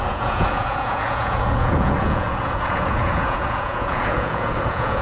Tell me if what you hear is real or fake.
fake